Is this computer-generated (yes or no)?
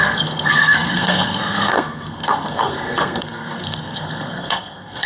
yes